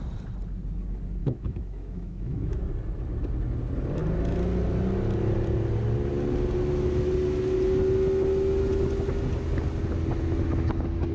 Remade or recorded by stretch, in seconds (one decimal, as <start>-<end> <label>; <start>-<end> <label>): 0.0-1.2 recorded; 1.2-2.6 remade; 2.6-11.1 recorded